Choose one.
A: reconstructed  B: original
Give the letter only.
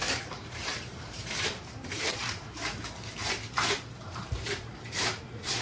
A